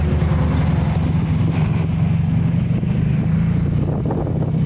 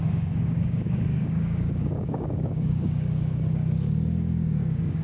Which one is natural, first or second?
first